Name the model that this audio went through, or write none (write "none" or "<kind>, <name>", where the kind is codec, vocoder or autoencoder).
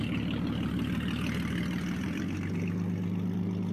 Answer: none